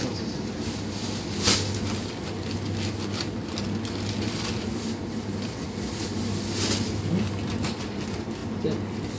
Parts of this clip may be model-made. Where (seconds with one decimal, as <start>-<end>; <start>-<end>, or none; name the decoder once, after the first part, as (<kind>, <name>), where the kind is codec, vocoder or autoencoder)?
none